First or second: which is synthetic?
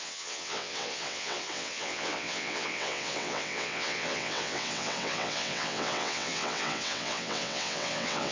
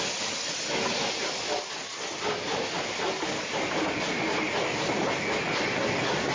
first